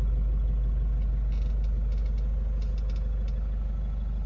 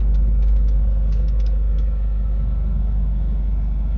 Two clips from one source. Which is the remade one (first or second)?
second